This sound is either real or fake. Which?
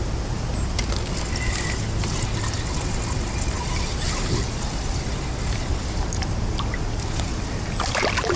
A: real